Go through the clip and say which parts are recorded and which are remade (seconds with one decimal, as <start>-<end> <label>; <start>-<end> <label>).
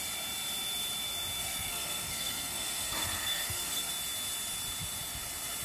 0.0-1.4 recorded; 1.4-3.9 remade; 3.9-5.6 recorded